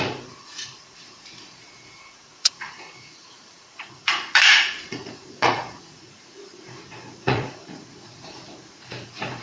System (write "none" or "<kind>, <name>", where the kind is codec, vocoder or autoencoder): vocoder, Vocos